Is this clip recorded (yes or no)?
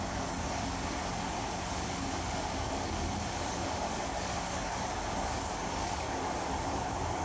no